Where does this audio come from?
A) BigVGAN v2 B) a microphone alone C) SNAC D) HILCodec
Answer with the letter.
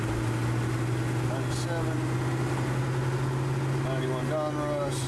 B